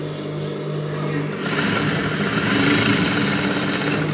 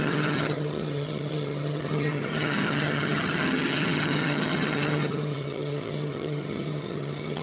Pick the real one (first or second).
first